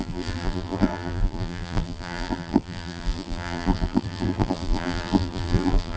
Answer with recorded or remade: remade